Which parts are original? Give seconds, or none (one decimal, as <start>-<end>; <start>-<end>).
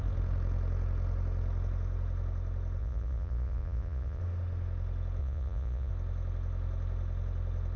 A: 0.0-2.8; 4.2-5.2; 5.9-7.8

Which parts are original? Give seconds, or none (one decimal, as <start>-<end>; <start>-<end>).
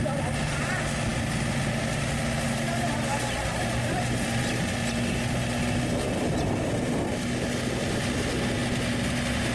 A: 0.0-9.5